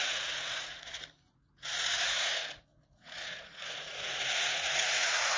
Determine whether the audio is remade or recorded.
remade